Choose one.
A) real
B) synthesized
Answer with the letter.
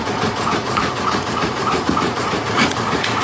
B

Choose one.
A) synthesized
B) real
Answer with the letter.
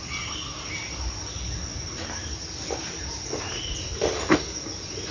B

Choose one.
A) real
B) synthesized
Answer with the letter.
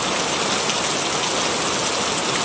A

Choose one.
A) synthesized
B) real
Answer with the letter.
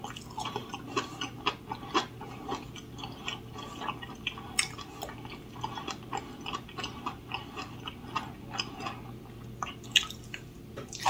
B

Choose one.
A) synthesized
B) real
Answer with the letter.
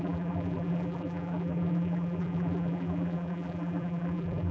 A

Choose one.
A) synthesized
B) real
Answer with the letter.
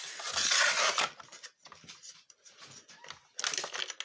B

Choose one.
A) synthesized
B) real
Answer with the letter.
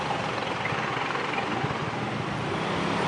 B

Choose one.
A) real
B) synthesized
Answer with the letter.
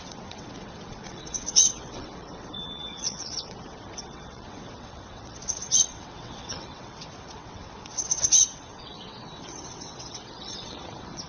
B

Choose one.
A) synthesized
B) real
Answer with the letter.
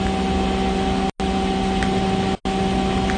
B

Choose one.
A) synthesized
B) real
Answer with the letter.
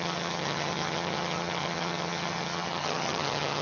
A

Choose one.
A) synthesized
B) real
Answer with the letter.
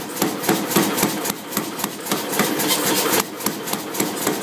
B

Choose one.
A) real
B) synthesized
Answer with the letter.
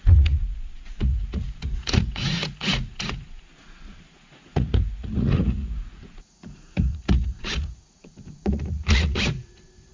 B